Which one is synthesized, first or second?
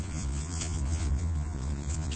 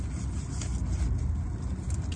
first